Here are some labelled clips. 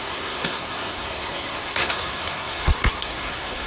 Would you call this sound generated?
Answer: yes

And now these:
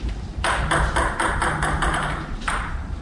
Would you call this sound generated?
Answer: yes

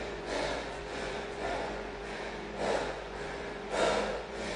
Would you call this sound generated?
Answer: yes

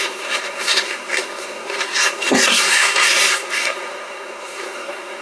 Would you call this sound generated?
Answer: yes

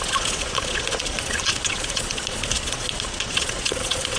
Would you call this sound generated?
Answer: yes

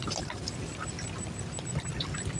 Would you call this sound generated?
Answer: no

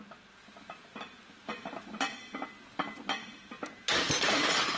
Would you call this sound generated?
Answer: no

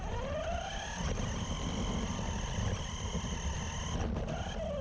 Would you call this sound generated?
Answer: no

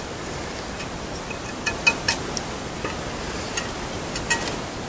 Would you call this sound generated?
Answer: no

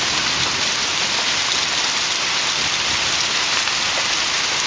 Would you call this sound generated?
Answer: no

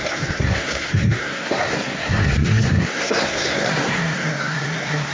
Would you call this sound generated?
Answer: yes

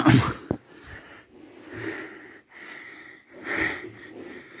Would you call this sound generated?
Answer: no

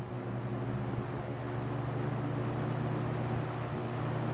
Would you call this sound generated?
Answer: no